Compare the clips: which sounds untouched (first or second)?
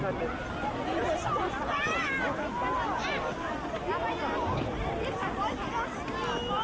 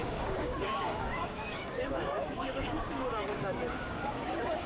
first